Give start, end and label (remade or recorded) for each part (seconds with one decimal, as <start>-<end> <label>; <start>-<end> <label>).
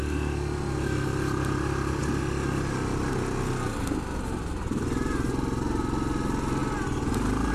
0.0-7.5 recorded